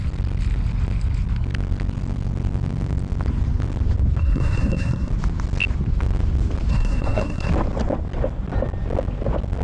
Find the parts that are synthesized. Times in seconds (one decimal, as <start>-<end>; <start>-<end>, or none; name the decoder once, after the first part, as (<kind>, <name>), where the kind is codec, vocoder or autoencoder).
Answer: 4.2-5.1 (codec, SNAC); 6.7-7.5